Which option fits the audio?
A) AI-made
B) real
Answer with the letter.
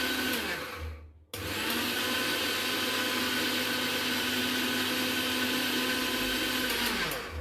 B